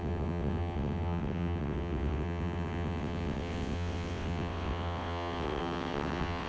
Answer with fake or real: fake